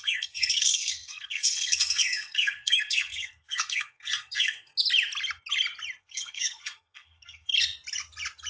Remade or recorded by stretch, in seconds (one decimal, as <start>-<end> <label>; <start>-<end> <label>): 0.0-4.7 remade; 4.7-6.0 recorded; 6.0-7.5 remade; 7.5-8.5 recorded